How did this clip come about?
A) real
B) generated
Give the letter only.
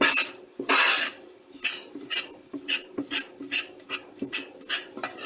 B